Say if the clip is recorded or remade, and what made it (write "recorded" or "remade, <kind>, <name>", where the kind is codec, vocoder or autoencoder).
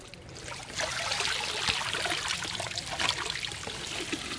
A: recorded